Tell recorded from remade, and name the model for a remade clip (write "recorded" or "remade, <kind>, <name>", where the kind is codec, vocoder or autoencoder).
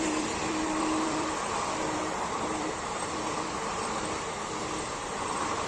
remade, vocoder, BigVGAN v2